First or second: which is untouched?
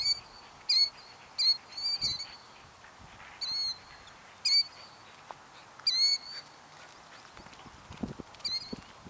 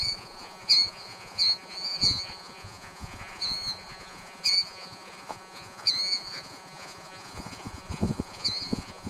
first